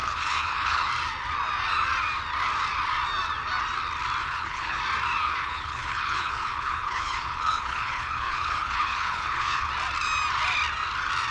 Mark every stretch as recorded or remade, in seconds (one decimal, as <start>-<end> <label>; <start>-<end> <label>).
0.0-0.9 remade; 0.9-4.2 recorded; 4.2-4.8 remade; 4.8-5.2 recorded; 5.2-9.7 remade; 9.7-11.3 recorded